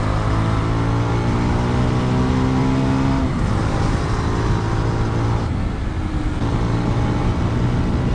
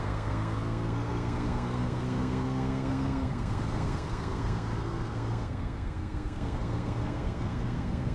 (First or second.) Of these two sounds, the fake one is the second